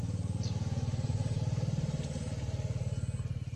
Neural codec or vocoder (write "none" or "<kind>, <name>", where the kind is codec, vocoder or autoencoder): none